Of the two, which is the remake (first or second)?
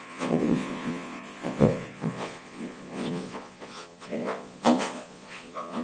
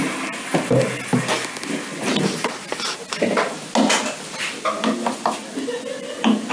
first